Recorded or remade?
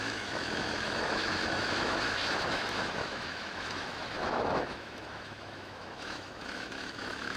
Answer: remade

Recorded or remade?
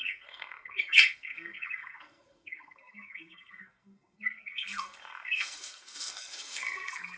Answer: remade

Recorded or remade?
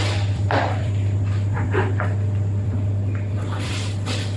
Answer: remade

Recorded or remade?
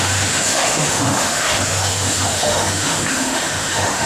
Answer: remade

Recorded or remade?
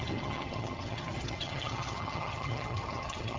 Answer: remade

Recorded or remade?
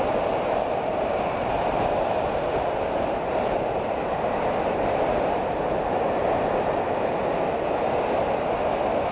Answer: recorded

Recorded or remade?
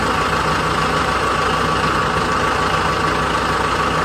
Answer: recorded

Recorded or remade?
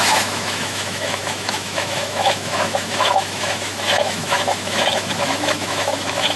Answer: remade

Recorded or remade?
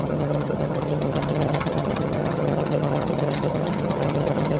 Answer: remade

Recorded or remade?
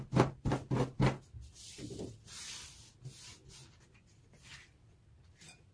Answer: recorded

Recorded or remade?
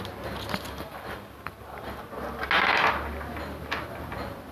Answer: recorded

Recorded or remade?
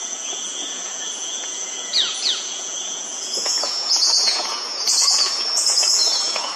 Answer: remade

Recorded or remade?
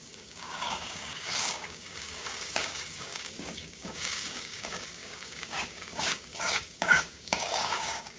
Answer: remade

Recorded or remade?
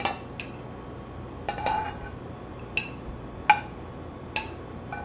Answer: recorded